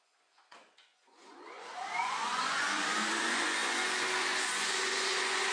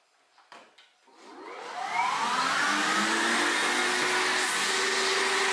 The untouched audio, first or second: second